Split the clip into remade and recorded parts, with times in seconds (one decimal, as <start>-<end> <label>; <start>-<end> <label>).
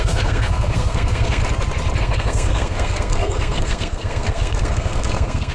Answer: 0.0-1.4 remade; 1.4-2.0 recorded; 2.0-5.5 remade